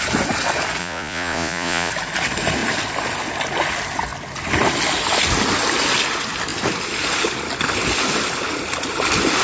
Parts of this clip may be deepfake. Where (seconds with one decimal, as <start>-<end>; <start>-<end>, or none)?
0.8-1.9